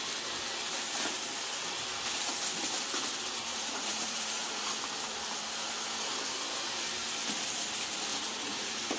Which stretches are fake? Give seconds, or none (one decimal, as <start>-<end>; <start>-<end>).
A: 3.5-4.7; 8.1-9.0